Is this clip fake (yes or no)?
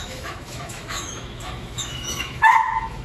yes